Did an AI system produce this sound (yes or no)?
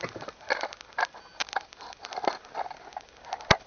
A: no